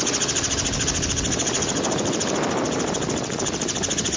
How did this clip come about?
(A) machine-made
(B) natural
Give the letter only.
B